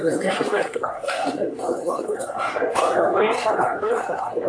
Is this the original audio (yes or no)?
no